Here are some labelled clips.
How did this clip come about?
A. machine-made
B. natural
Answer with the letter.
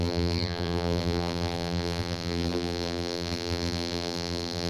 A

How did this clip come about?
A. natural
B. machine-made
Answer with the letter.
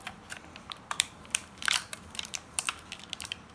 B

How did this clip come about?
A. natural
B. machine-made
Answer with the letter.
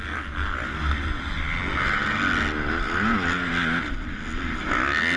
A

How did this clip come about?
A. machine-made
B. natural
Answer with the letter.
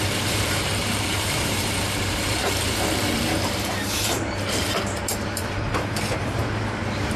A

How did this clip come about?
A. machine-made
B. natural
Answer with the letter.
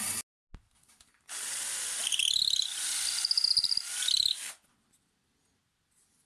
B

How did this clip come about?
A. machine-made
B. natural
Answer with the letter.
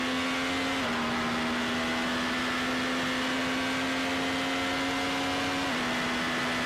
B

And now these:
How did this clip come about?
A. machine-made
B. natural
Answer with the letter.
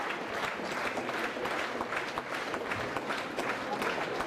B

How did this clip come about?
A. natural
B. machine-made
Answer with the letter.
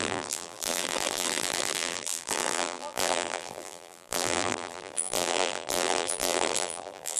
B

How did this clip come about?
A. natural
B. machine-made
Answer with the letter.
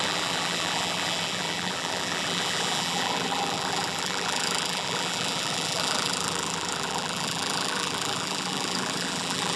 B